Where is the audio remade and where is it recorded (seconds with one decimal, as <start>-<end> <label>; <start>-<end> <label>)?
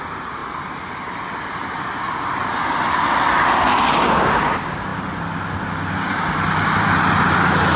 0.0-7.8 recorded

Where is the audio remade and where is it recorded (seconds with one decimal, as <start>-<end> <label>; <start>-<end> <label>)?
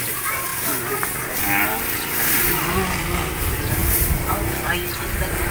0.0-5.5 recorded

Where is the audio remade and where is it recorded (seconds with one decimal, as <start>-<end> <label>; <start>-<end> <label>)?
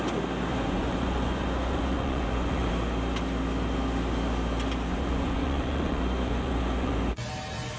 0.0-0.5 recorded; 0.5-2.7 remade; 2.7-4.9 recorded; 4.9-7.3 remade; 7.3-7.8 recorded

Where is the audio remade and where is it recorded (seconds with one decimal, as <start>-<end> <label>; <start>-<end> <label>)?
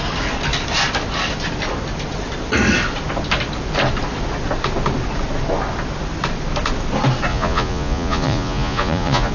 0.0-7.3 recorded; 7.3-9.3 remade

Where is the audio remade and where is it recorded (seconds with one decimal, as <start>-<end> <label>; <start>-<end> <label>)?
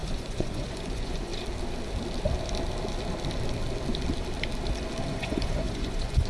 0.0-1.3 remade; 1.3-5.1 recorded; 5.1-6.3 remade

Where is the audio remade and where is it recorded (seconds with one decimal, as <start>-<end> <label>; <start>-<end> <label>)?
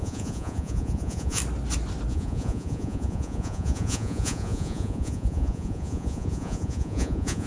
0.0-1.4 remade; 1.4-2.1 recorded; 2.1-7.5 remade